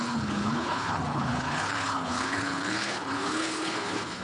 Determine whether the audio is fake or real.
fake